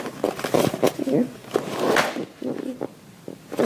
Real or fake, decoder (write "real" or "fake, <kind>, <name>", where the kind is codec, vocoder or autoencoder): real